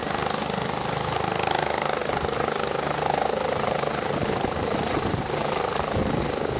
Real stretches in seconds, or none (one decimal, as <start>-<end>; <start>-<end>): 0.0-2.0; 6.0-6.6